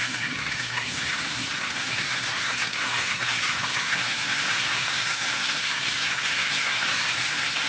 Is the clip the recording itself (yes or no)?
no